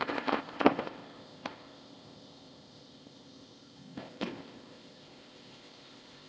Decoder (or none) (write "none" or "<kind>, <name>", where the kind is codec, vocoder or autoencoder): codec, ZipCodec